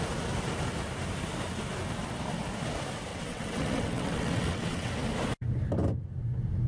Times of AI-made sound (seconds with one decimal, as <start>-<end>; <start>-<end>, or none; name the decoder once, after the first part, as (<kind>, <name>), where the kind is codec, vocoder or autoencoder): 3.1-4.9 (vocoder, WaveNeXt)